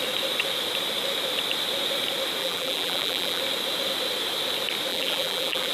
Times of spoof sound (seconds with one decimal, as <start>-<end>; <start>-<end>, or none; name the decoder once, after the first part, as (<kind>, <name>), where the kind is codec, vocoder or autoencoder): 2.4-3.4 (vocoder, BigVGAN v2); 4.9-5.7